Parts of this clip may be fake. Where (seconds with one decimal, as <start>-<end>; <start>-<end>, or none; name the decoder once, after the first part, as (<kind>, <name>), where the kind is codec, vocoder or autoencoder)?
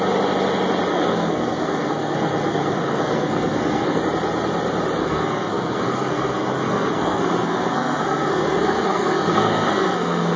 0.9-4.0 (codec, SNAC); 5.0-10.4